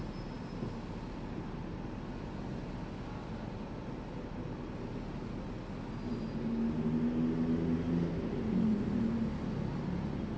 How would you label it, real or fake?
real